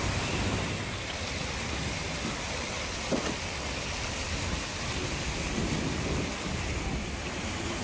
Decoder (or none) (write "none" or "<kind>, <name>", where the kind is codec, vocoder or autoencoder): none